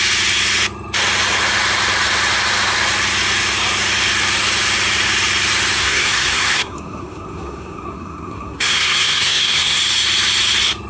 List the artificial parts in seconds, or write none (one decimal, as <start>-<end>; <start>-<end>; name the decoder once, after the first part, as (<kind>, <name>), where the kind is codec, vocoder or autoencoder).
5.8-9.8 (codec, SNAC)